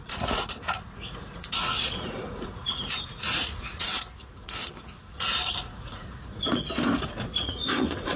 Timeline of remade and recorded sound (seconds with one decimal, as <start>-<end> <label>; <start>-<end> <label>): 0.0-8.2 remade